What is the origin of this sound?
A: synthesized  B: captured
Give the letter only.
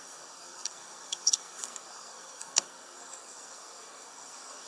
A